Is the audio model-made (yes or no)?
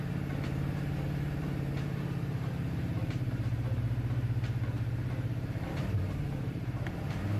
yes